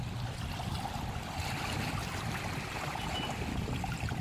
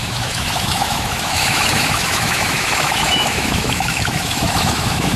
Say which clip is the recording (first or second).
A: first